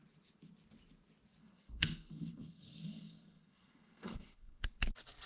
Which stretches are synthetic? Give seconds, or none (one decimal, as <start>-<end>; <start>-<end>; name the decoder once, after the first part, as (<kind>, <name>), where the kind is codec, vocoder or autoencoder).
1.4-4.6 (codec, SNAC)